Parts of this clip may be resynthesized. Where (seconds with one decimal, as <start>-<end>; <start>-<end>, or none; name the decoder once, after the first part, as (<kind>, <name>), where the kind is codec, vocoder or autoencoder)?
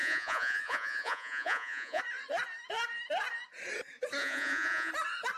0.0-2.0 (vocoder, Vocos); 4.2-4.9